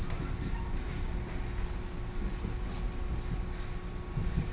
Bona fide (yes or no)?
yes